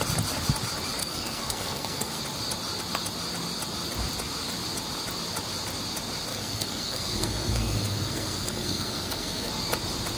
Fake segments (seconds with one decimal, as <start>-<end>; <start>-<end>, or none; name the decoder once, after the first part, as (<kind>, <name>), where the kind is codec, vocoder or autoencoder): 1.0-2.2 (codec, SNAC); 6.3-9.5

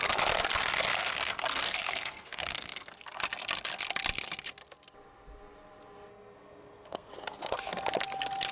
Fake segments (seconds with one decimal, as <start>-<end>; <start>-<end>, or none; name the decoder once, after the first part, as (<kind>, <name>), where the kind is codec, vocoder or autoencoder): 1.0-2.9 (codec, SNAC); 6.1-7.1

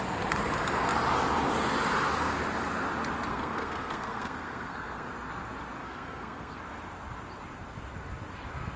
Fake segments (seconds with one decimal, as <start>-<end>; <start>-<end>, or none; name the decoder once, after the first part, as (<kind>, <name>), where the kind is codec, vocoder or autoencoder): 3.3-5.1 (codec, SNAC); 5.8-6.6

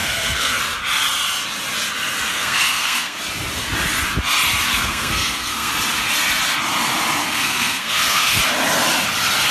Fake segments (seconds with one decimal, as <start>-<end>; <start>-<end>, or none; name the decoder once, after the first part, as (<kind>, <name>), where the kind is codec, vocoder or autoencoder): 0.0-0.6 (codec, SNAC); 2.3-3.2; 4.7-5.7; 7.2-8.4